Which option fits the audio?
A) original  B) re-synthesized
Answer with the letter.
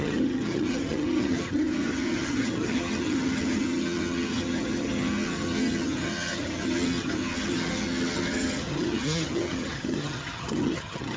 B